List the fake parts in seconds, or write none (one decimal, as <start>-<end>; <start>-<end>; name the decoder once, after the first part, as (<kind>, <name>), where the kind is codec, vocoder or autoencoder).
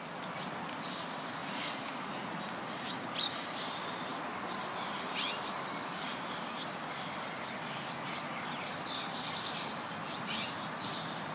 1.4-2.4 (vocoder, Vocos)